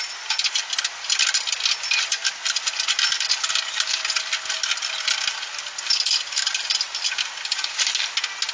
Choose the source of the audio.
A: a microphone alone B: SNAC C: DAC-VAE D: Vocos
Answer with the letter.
A